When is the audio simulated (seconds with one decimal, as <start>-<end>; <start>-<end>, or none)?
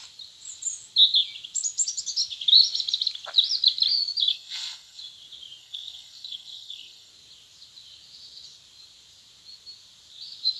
4.3-5.0; 5.6-7.1